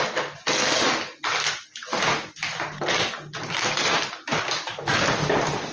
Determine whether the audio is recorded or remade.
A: recorded